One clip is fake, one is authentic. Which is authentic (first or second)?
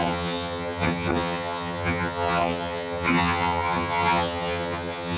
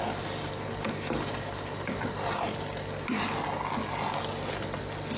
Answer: second